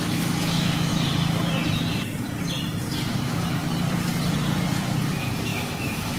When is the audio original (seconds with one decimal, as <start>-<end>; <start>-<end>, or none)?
0.9-3.1; 3.6-5.1